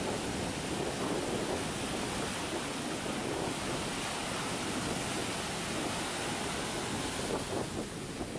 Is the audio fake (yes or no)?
no